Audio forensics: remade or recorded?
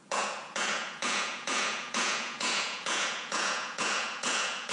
remade